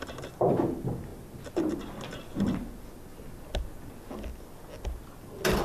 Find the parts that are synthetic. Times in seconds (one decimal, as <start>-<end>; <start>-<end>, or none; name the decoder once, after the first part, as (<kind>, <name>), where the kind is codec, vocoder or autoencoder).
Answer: none